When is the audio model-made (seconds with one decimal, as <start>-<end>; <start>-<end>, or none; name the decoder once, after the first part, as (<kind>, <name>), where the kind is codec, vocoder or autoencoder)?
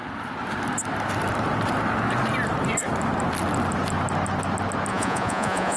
4.9-5.8 (vocoder, Vocos)